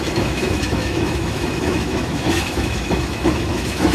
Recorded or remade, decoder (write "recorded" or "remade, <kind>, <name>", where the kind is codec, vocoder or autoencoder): remade, autoencoder, DAC-VAE